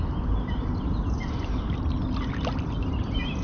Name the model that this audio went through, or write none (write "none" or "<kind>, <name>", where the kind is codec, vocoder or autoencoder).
none